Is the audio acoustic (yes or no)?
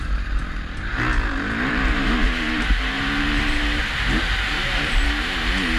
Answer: no